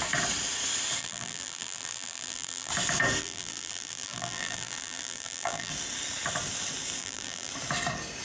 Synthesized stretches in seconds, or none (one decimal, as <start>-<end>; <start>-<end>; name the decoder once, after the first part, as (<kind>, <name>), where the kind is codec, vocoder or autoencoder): 1.0-2.7 (vocoder, BigVGAN v2); 3.2-5.7; 7.0-7.5